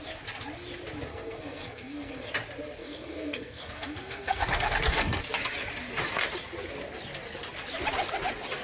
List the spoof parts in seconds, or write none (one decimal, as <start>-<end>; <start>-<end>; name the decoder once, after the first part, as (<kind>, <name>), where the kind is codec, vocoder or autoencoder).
1.1-2.3 (codec, SNAC); 2.8-5.2

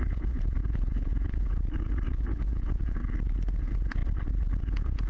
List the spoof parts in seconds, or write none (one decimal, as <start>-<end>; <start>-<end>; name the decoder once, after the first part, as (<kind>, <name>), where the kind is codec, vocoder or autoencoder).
0.0-3.0 (vocoder, Vocos); 3.6-4.0; 4.6-5.1

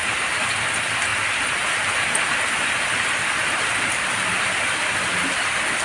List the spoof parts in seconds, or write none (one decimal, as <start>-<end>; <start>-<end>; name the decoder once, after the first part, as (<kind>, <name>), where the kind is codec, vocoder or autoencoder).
none